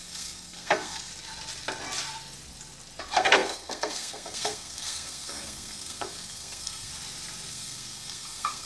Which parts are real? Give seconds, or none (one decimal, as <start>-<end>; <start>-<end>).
1.1-3.0; 6.9-7.5